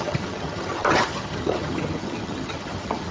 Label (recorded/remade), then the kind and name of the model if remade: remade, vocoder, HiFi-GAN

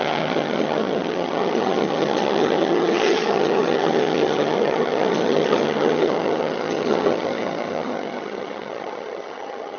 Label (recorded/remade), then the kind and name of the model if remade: remade, vocoder, HiFi-GAN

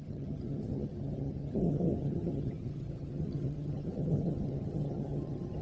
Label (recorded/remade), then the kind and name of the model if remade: remade, vocoder, HiFi-GAN